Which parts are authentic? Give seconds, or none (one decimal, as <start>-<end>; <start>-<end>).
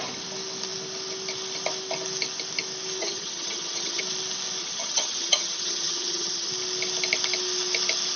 0.0-3.0; 4.0-4.6; 6.5-8.2